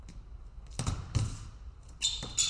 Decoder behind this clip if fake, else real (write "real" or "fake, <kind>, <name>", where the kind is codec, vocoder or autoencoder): real